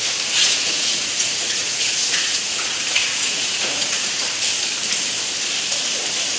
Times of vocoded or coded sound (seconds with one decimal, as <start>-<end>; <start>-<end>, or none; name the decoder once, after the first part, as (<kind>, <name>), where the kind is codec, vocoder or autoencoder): 0.4-4.2 (vocoder, Vocos)